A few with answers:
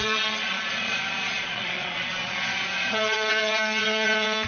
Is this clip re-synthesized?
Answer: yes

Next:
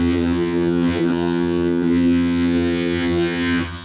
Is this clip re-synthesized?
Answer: yes